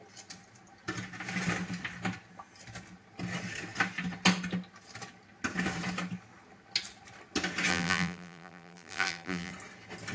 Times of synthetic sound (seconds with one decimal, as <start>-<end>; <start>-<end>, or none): 7.7-9.5